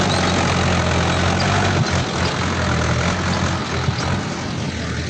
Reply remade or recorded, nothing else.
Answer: recorded